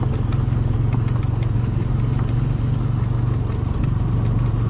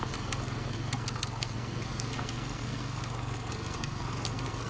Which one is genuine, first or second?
first